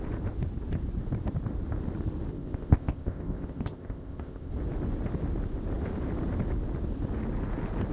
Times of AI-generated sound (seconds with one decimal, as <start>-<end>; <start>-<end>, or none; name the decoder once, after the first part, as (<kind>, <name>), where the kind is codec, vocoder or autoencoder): 2.3-4.5 (codec, ZipCodec)